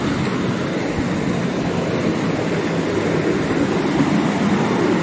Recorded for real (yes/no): yes